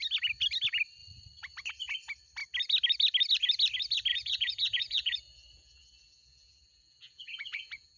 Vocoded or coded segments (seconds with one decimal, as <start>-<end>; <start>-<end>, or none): 4.1-8.0